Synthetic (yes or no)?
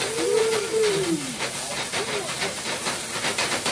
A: yes